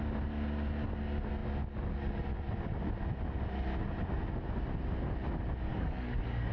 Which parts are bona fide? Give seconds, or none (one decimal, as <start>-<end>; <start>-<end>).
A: 0.0-5.7

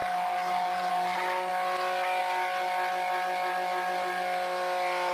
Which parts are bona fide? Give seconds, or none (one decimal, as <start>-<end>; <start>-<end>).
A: 0.9-5.1

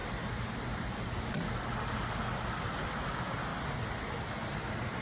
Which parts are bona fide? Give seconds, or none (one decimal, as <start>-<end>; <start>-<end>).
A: 0.0-5.0

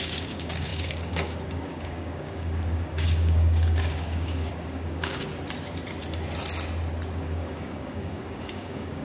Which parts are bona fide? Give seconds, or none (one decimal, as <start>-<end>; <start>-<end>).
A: 5.3-7.1

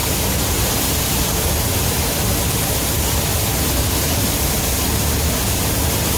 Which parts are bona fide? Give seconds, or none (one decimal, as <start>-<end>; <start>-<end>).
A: 0.0-6.2

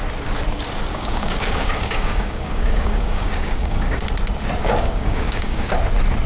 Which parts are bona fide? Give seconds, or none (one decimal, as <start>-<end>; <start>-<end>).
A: 0.0-0.9; 4.0-4.6; 5.7-6.3